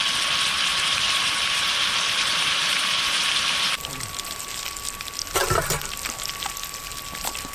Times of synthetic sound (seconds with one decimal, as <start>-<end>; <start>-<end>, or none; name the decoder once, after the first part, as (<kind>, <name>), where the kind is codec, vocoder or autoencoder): 0.7-4.6 (vocoder, BigVGAN v2)